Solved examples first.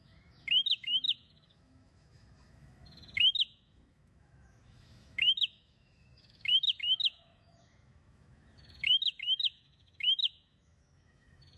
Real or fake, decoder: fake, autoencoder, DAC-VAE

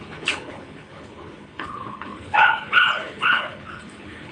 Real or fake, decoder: fake, codec, HILCodec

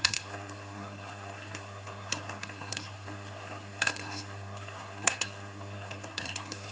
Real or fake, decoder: fake, codec, SNAC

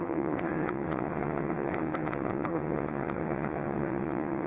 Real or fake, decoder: fake, vocoder, WaveNeXt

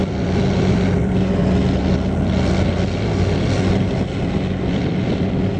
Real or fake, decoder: real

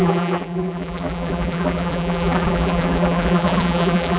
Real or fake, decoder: fake, vocoder, BigVGAN v2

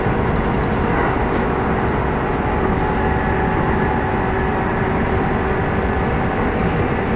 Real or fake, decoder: real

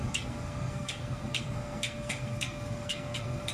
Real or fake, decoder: fake, codec, SNAC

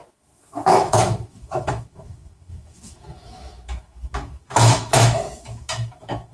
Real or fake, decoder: fake, autoencoder, DAC-VAE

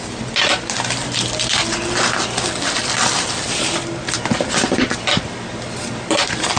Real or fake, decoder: real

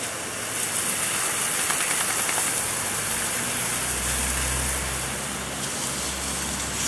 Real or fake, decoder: real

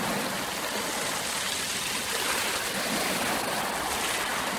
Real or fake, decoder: real